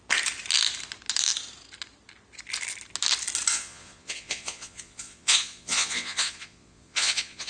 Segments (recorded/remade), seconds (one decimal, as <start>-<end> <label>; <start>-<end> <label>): 0.0-3.5 recorded; 3.5-7.5 remade